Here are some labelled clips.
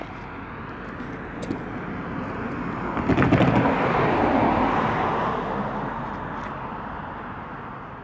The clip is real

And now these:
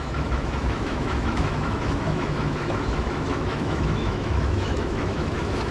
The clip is fake